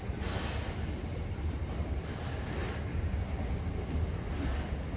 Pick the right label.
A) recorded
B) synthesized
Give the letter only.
A